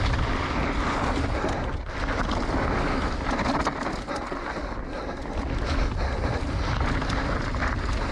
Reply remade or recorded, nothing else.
recorded